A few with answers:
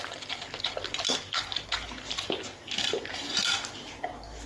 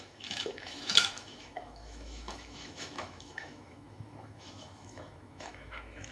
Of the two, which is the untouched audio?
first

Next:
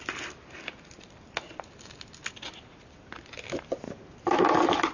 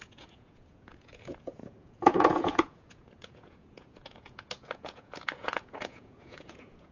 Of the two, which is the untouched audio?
first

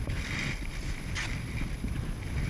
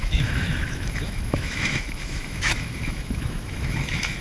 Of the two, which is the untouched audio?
first